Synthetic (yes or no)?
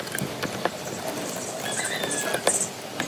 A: no